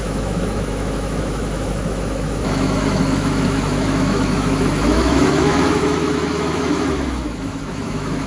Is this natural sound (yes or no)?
no